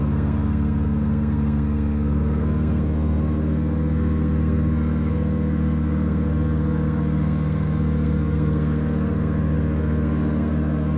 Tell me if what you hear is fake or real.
fake